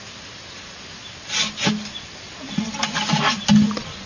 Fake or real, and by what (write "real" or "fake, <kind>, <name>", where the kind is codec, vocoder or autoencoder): real